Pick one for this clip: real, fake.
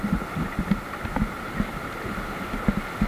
real